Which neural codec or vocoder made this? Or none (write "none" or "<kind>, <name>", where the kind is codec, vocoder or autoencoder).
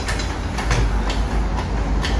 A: none